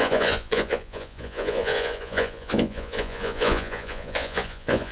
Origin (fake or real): fake